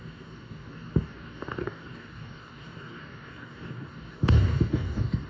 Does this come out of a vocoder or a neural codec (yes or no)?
yes